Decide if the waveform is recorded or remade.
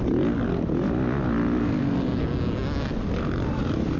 recorded